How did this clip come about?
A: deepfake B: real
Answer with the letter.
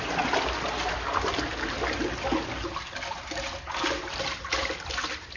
B